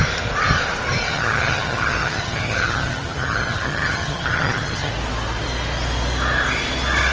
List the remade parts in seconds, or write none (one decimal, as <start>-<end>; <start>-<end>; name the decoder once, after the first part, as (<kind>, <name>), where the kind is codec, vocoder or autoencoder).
1.1-4.9 (vocoder, HiFi-GAN)